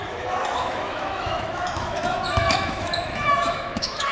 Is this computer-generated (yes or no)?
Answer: yes